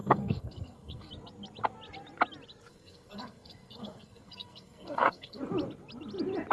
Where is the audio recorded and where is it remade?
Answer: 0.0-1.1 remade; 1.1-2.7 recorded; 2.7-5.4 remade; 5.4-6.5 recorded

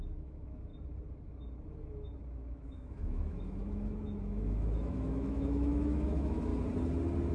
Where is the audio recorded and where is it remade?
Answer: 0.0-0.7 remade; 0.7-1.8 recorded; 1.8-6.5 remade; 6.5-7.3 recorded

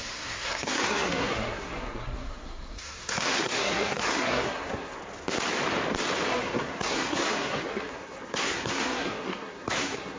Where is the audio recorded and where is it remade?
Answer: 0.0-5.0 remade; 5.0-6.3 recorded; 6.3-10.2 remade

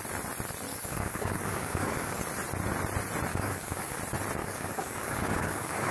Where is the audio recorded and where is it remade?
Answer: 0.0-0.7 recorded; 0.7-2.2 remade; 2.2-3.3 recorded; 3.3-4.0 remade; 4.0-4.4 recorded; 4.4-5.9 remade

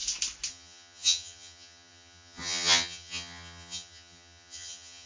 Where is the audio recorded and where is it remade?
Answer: 0.0-0.5 recorded; 0.5-5.1 remade

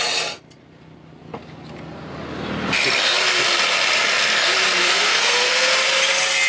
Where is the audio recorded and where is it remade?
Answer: 0.0-4.8 recorded; 4.8-5.7 remade; 5.7-6.5 recorded

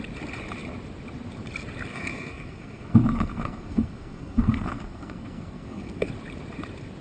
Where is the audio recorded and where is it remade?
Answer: 0.0-1.9 recorded; 1.9-6.1 remade; 6.1-7.0 recorded